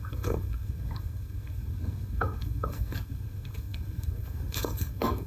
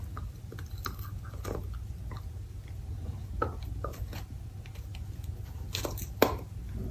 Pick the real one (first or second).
second